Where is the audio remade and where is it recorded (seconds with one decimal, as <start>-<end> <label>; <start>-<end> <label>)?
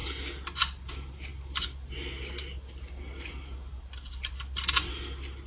0.0-5.5 recorded